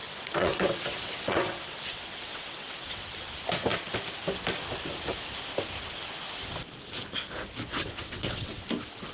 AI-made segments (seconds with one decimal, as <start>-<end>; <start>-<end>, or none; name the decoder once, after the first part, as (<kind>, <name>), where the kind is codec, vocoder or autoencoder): 0.0-3.3 (vocoder, WaveNeXt); 7.7-8.7